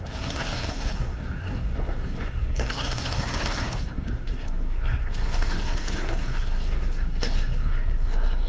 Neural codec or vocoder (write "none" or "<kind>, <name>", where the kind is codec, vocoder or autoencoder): codec, SNAC